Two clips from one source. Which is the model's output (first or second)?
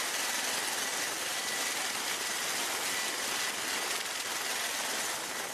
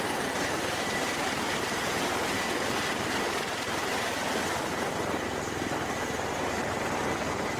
second